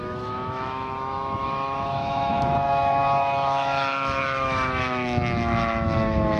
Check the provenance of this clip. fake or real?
fake